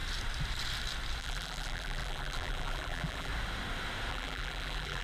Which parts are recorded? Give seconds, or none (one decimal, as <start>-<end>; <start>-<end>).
0.0-1.2; 3.3-4.1